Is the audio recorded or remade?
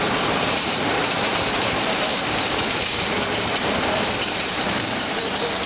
remade